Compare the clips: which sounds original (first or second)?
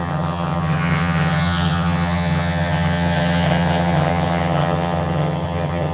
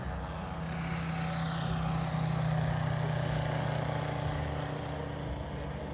second